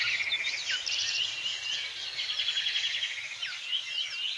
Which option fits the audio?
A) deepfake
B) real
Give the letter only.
B